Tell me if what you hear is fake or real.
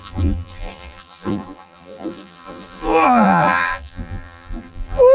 fake